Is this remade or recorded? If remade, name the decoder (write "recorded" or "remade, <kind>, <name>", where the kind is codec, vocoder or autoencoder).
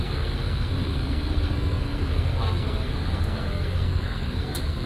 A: remade, codec, SNAC